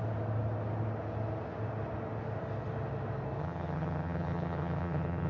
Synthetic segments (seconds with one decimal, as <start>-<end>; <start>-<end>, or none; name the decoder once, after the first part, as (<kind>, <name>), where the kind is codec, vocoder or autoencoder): 3.4-5.3 (vocoder, HiFi-GAN)